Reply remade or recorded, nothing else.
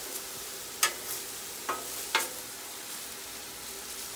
recorded